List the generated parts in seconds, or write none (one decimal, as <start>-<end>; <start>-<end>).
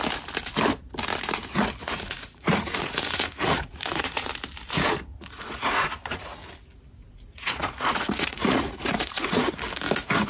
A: 1.8-4.3; 5.1-6.5; 7.0-9.5